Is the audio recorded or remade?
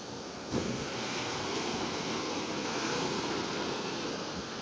remade